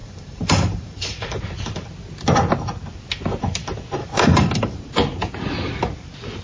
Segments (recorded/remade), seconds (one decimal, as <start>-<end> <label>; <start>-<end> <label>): 0.0-1.4 remade; 1.4-4.0 recorded; 4.0-4.8 remade; 4.8-6.4 recorded